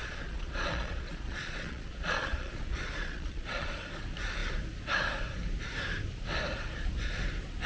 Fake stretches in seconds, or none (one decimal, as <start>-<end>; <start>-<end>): 0.0-3.7